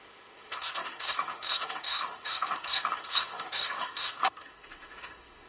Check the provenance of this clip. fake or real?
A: fake